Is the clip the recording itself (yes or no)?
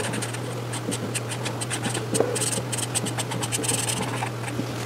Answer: yes